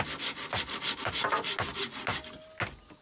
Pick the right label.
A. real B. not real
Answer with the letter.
A